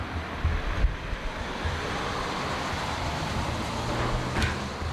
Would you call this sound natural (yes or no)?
yes